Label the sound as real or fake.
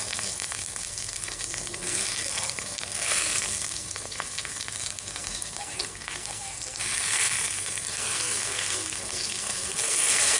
fake